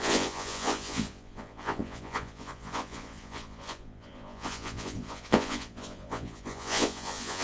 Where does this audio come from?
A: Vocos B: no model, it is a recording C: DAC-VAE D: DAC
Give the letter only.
A